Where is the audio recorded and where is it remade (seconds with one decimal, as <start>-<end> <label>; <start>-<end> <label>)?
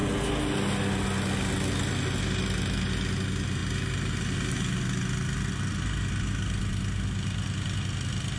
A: 0.0-8.4 recorded